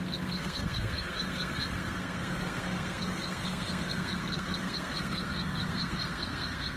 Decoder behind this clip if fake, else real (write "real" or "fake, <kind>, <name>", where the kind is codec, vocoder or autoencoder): fake, codec, SNAC